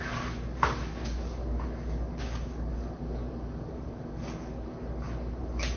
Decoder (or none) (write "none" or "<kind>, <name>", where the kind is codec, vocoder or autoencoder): codec, DAC